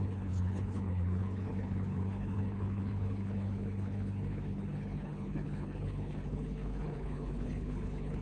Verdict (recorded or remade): remade